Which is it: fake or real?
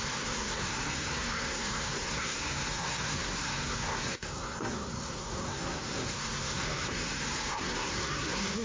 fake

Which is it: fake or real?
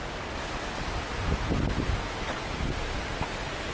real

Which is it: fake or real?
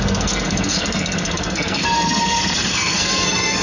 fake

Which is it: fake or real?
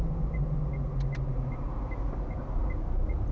real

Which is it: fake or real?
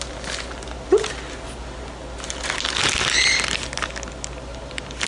real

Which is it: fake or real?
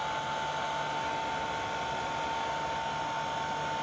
real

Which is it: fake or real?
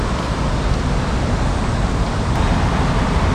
real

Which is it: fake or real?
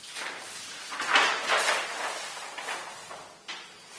real